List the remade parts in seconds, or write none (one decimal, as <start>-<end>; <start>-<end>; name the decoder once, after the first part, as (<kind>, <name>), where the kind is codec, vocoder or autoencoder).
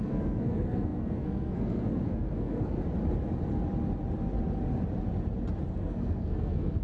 0.0-2.8 (codec, SNAC); 5.7-6.8